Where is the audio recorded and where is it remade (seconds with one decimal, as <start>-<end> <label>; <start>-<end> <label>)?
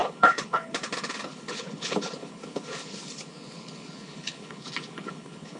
0.0-5.6 remade